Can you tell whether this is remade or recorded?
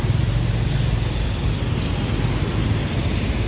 recorded